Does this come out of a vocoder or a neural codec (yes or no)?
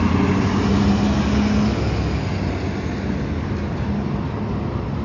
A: no